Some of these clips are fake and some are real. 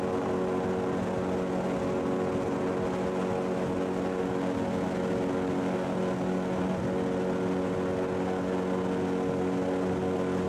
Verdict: real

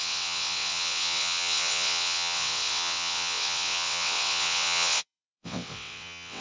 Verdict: fake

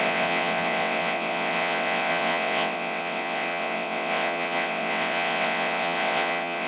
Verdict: fake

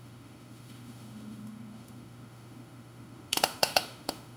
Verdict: fake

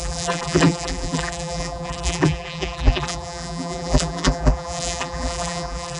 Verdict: fake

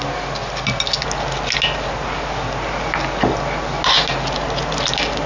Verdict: real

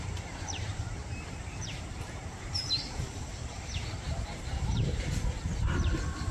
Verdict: fake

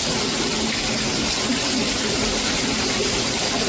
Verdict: real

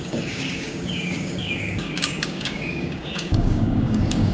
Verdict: fake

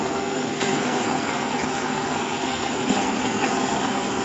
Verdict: fake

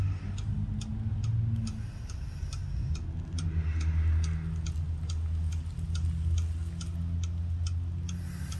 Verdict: real